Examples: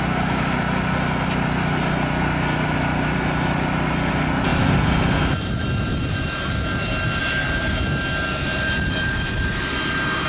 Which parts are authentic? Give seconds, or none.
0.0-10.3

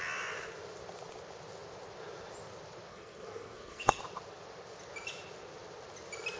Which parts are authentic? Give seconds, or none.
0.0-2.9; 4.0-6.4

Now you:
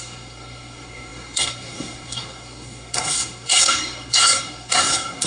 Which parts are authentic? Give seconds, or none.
none